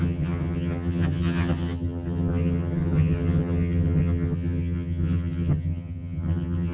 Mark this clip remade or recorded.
remade